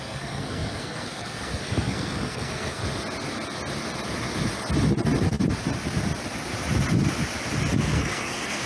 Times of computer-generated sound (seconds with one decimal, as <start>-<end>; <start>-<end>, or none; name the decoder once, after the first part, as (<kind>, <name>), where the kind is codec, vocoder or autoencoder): 0.0-2.8 (codec, SNAC); 7.9-8.7